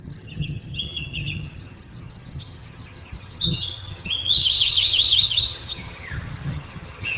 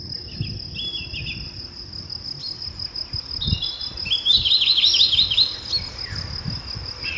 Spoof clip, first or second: first